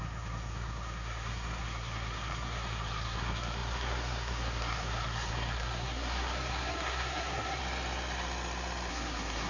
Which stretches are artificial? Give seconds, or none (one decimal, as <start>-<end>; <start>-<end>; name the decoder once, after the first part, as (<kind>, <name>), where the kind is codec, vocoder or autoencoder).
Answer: 0.0-7.6 (codec, SNAC); 8.9-9.5